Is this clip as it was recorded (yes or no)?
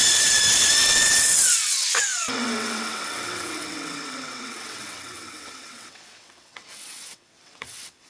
no